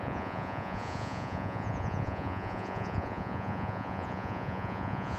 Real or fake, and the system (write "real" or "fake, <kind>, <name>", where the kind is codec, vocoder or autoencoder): fake, vocoder, Vocos